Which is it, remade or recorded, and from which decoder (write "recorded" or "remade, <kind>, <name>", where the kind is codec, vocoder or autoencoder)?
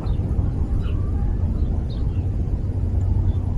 recorded